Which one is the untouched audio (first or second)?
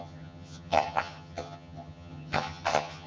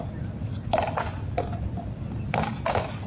second